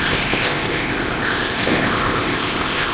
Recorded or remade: remade